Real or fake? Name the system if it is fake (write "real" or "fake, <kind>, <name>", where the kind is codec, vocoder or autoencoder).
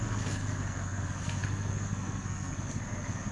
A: fake, codec, SNAC